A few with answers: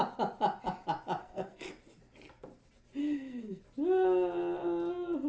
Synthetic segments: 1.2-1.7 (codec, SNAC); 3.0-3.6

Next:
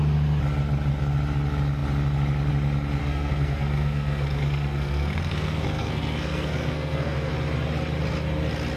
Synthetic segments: 3.0-7.3 (codec, SNAC)